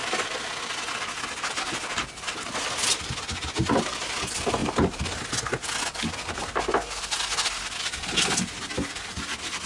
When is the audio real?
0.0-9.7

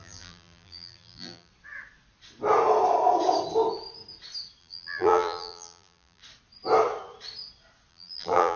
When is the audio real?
1.5-4.6; 6.2-7.9

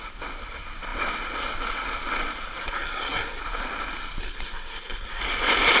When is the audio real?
0.0-2.6; 3.4-4.2; 5.2-5.8

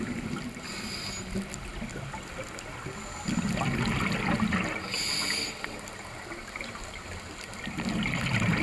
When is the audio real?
0.0-8.6